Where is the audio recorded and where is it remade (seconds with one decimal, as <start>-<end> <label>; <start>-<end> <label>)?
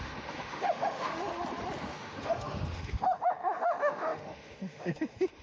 0.0-1.3 remade; 1.3-1.8 recorded; 1.8-5.4 remade